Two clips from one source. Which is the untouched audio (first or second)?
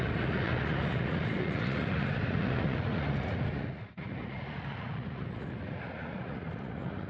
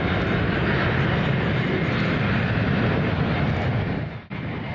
second